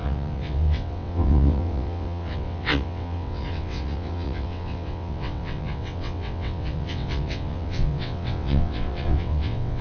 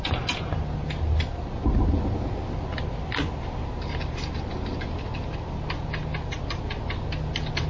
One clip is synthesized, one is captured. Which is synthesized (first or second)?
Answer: first